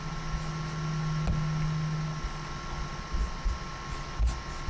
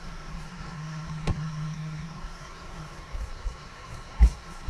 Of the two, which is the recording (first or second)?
first